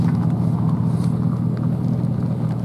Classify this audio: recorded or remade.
recorded